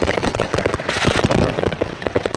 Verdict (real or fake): fake